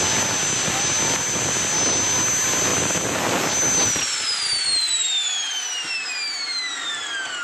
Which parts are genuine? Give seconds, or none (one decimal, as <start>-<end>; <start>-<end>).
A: 0.0-7.4